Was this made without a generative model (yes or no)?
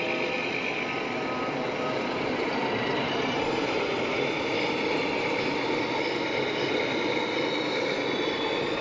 yes